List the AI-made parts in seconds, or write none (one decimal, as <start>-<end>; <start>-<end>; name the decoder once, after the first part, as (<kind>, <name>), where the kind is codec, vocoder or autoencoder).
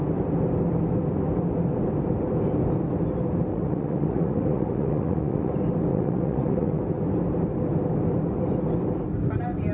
3.5-5.5 (vocoder, Vocos); 5.9-6.8